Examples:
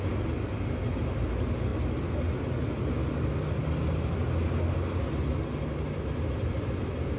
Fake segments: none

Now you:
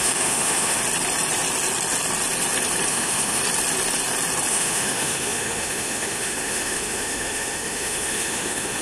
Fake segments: 0.0-0.8 (autoencoder, DAC-VAE); 2.9-3.4; 4.5-8.8

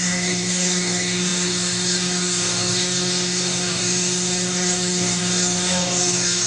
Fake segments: 0.0-6.5 (codec, DAC)